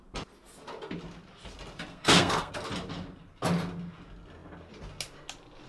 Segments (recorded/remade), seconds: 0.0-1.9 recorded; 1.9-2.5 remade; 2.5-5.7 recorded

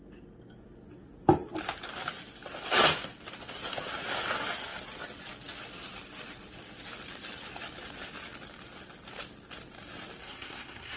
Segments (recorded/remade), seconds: 0.0-10.2 recorded; 10.2-11.0 remade

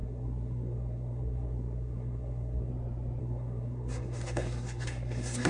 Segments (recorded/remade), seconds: 0.0-2.7 remade; 2.7-3.2 recorded; 3.2-5.5 remade

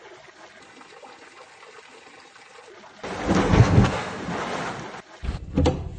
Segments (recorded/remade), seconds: 0.0-3.4 recorded; 3.4-4.2 remade; 4.2-6.0 recorded

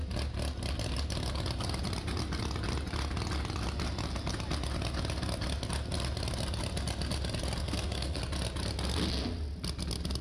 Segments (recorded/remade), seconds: 0.0-7.6 recorded; 7.6-8.2 remade; 8.2-10.2 recorded

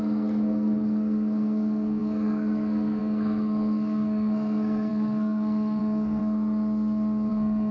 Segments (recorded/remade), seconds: 0.0-6.2 remade; 6.2-7.3 recorded; 7.3-7.7 remade

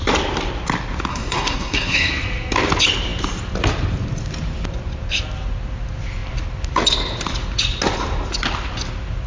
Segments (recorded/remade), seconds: 0.0-1.1 recorded; 1.1-2.1 remade; 2.1-9.3 recorded

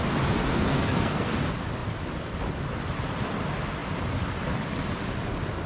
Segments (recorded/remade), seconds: 0.0-0.5 recorded; 0.5-1.4 remade; 1.4-5.7 recorded